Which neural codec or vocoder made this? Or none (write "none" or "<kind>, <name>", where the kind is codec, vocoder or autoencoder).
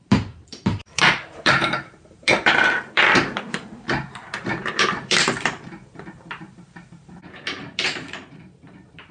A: vocoder, BigVGAN v2